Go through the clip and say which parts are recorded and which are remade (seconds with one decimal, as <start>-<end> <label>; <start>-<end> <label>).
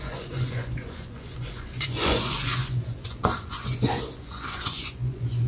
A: 0.0-5.5 remade